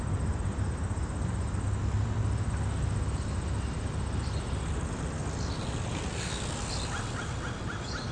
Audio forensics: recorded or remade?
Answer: recorded